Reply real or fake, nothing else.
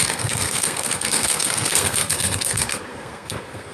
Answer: fake